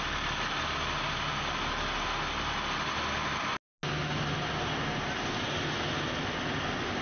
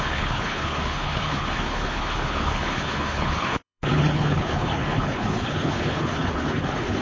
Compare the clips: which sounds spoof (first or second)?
second